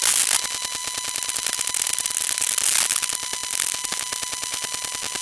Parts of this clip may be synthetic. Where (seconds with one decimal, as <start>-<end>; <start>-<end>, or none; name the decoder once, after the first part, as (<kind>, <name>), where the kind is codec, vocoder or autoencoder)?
none

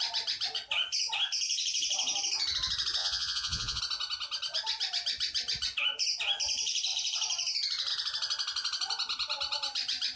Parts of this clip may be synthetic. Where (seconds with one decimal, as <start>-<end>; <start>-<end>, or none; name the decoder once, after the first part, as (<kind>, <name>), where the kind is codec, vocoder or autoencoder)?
3.0-3.8 (vocoder, Vocos)

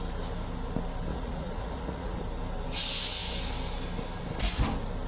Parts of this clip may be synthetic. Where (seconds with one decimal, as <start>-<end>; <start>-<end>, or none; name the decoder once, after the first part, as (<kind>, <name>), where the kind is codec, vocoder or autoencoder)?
1.1-2.2 (vocoder, Vocos)